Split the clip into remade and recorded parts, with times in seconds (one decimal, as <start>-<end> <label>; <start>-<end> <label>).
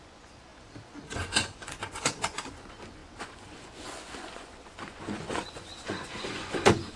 0.0-7.0 remade